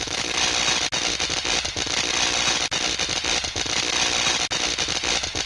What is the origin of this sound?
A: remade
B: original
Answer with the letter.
B